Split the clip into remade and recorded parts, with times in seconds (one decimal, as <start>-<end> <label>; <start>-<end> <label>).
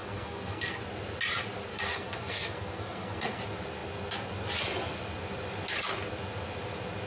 0.0-0.8 remade; 0.8-1.7 recorded; 1.7-3.4 remade; 3.4-7.1 recorded